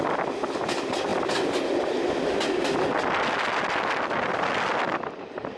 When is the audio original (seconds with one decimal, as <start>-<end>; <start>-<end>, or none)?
0.0-5.6